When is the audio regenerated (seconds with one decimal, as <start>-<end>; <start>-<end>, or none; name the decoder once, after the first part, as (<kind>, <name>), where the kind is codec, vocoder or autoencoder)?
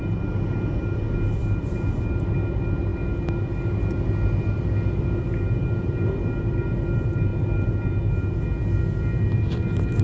none